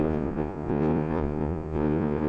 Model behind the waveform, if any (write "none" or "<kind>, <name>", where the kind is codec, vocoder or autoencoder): vocoder, Vocos